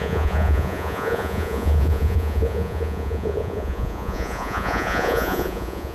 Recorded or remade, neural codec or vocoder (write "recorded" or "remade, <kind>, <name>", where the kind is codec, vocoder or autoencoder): remade, vocoder, Vocos